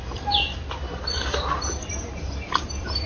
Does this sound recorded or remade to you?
recorded